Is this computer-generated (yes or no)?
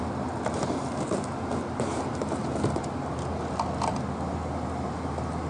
no